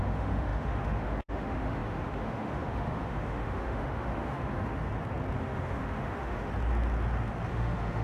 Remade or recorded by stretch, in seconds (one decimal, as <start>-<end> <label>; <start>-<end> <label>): 0.0-4.9 remade; 4.9-5.4 recorded; 5.4-6.5 remade; 6.5-7.5 recorded; 7.5-8.0 remade